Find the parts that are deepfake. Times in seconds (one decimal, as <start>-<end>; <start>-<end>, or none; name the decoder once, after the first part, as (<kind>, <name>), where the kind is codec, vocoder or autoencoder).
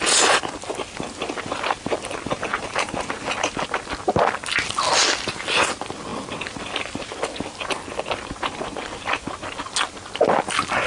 2.5-3.1 (vocoder, BigVGAN v2)